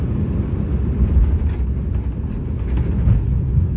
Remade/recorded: recorded